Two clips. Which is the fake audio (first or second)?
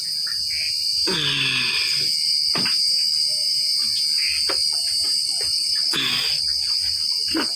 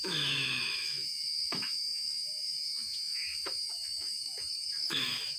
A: second